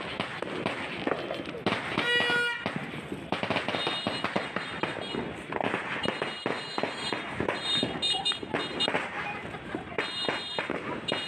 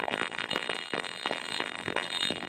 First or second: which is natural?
first